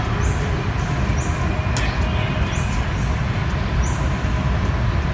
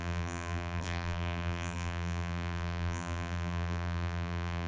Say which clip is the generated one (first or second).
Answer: second